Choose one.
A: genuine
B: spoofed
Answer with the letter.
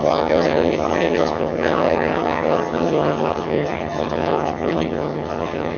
B